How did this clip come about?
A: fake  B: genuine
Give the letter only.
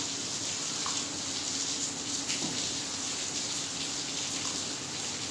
B